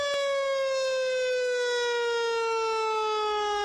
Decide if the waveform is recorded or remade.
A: recorded